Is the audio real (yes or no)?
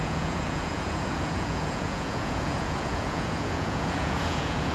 no